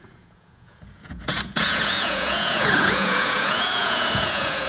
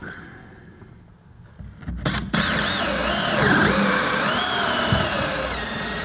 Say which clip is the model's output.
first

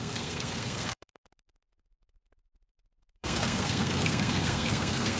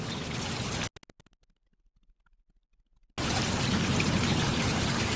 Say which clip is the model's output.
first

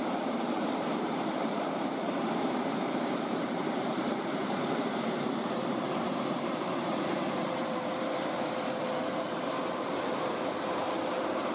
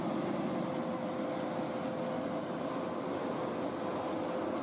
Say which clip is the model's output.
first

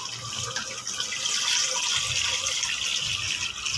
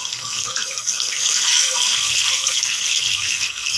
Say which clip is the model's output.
second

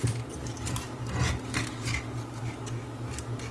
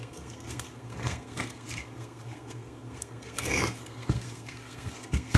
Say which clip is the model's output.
second